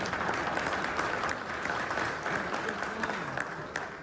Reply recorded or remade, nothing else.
recorded